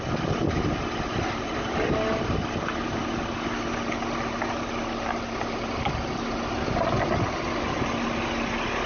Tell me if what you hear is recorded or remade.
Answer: recorded